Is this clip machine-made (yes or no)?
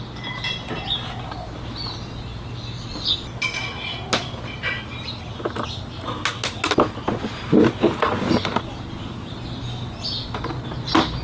no